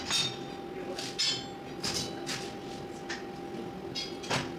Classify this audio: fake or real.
real